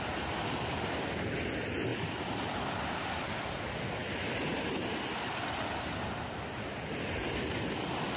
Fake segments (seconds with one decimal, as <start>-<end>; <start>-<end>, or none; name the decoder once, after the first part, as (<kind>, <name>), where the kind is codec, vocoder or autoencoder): none